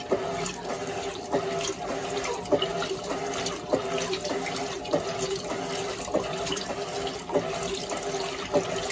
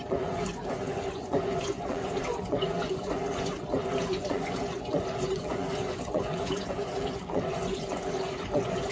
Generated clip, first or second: second